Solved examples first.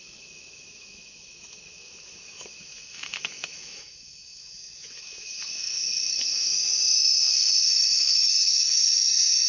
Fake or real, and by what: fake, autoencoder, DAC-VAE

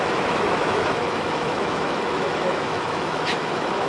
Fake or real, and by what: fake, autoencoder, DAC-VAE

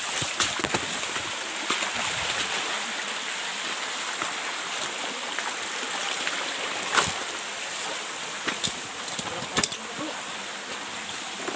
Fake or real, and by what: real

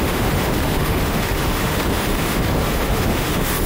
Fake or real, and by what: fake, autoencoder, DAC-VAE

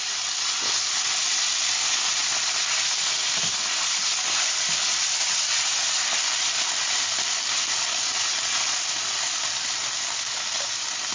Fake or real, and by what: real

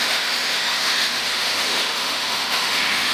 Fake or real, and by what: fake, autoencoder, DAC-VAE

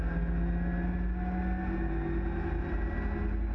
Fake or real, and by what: real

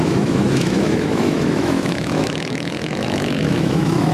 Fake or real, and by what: fake, autoencoder, DAC-VAE